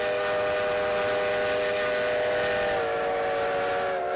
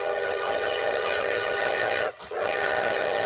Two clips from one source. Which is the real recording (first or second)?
first